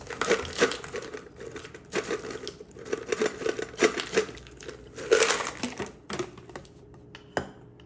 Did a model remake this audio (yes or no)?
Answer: no